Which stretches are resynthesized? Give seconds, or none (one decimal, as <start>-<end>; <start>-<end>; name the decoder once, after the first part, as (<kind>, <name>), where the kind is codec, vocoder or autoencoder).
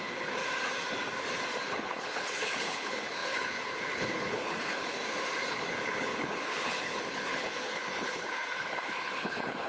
0.0-0.4 (codec, HILCodec); 1.6-5.0; 5.5-9.7